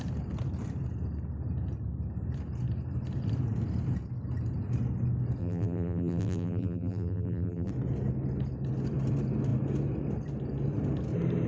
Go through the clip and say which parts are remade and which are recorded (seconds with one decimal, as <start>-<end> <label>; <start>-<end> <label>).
0.0-5.4 recorded; 5.4-7.7 remade; 7.7-11.5 recorded